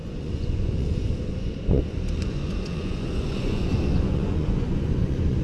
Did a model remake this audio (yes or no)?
yes